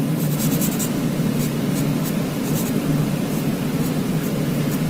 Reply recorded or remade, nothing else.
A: recorded